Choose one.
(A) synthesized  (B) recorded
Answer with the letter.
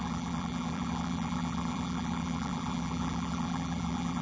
A